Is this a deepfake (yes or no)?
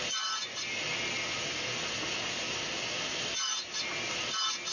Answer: no